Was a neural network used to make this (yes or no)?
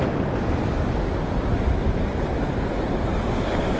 no